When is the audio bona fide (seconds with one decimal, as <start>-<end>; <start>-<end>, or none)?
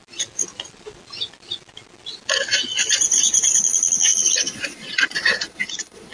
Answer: 0.0-3.6